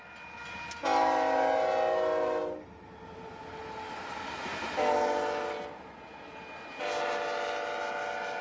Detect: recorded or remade recorded